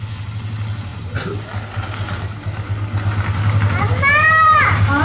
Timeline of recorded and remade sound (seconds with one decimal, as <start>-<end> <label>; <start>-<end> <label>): 0.0-5.0 recorded